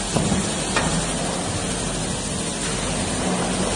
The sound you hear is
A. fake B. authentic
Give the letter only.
B